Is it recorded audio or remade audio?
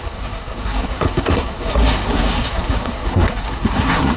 remade